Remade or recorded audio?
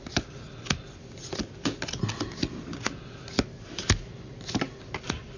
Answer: recorded